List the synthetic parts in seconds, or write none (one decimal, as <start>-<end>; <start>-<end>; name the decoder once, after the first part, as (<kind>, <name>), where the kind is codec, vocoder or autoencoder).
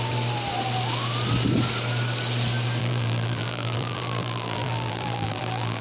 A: 2.8-5.8 (vocoder, BigVGAN v2)